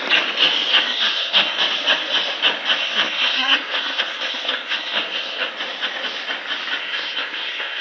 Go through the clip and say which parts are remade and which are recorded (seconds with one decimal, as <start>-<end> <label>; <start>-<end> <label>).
0.0-0.7 recorded; 0.7-1.6 remade; 1.6-2.8 recorded; 2.8-5.5 remade; 5.5-6.8 recorded; 6.8-7.8 remade